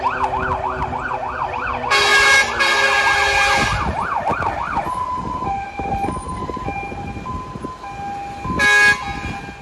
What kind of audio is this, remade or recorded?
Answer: recorded